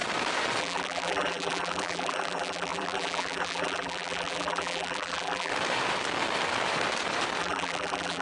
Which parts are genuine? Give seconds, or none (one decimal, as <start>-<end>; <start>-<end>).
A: 0.0-0.6; 5.5-7.4